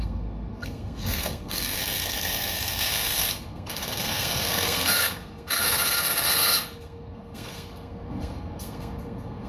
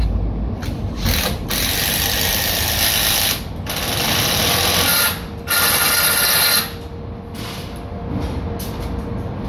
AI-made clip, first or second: first